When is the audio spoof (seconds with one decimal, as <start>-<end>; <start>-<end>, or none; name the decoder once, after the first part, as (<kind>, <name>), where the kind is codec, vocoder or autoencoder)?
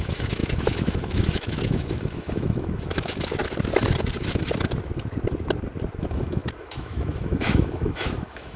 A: 0.0-3.4 (autoencoder, DAC-VAE); 6.0-8.6